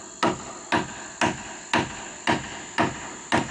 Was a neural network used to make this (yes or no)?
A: no